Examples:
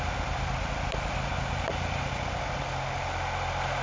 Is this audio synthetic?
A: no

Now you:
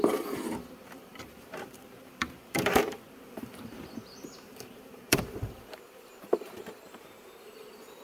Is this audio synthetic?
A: yes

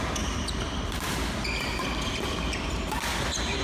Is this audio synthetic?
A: no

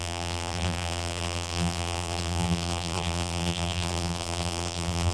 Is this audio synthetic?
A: yes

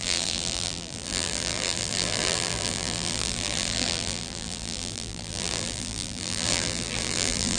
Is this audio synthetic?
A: yes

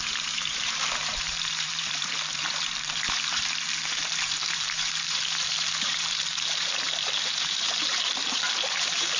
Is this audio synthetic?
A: yes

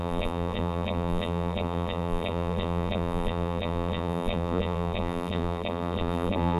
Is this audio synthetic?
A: yes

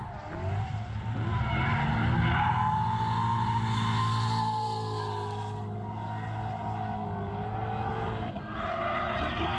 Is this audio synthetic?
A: no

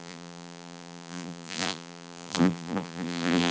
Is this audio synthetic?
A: yes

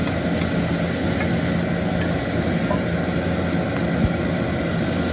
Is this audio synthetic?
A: no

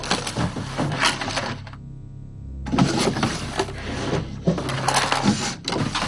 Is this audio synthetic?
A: no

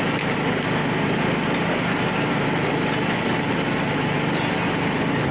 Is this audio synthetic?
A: no